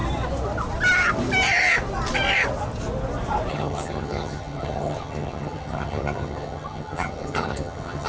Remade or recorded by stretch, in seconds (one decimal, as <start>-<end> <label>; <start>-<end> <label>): 0.0-3.5 recorded; 3.5-8.1 remade